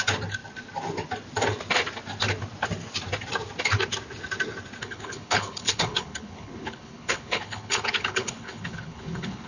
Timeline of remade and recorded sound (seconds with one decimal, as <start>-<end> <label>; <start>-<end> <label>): 0.0-4.8 recorded; 4.8-9.5 remade